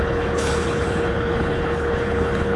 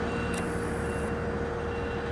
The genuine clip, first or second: second